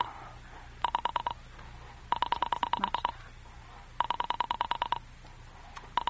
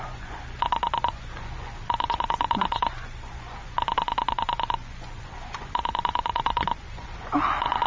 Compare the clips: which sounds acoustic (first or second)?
first